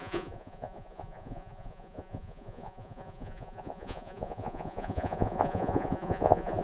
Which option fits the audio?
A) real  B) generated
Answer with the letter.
B